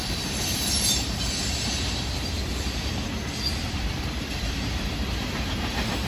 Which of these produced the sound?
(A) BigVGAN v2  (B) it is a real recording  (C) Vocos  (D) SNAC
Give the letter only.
A